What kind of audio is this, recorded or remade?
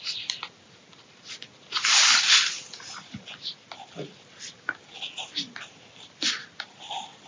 recorded